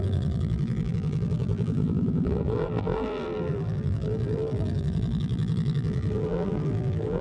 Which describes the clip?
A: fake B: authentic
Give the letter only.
A